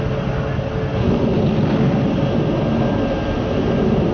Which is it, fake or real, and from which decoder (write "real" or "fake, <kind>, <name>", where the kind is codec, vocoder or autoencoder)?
real